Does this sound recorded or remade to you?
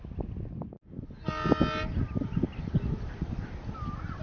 recorded